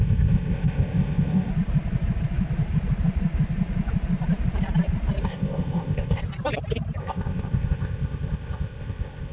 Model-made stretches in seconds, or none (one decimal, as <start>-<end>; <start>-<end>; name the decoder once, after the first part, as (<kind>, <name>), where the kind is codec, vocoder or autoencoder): 0.0-1.5 (codec, ZipCodec); 5.2-6.2; 7.0-9.3